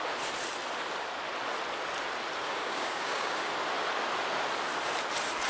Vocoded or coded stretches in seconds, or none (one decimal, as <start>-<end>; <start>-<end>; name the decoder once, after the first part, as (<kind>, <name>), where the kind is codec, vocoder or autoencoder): 2.4-3.5 (codec, DAC)